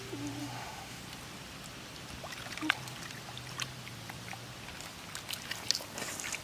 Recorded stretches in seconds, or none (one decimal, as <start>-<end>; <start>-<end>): 0.0-0.4; 1.0-6.4